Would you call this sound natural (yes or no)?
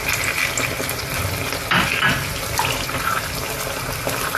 yes